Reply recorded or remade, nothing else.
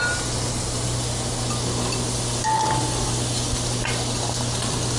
recorded